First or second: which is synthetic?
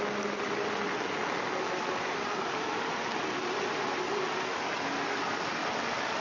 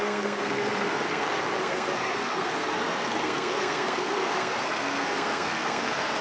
second